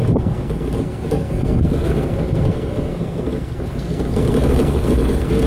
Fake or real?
fake